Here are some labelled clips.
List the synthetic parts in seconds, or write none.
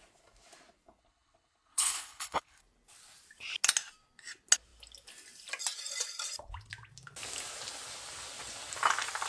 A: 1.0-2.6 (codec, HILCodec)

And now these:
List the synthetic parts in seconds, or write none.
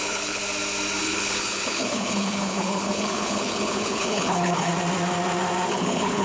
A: 0.0-0.4 (codec, HILCodec); 1.0-4.7; 5.7-6.2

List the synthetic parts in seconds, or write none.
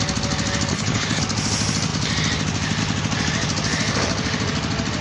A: 0.7-1.2 (codec, HILCodec)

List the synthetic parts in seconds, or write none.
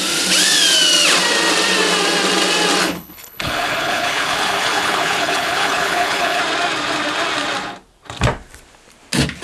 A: 2.8-6.4 (codec, HILCodec)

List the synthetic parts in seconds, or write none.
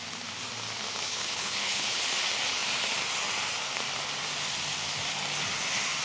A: 1.1-2.0 (codec, HILCodec)